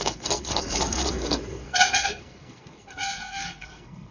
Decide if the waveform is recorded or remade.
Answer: remade